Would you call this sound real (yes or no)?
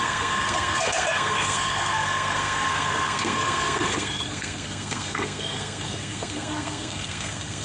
no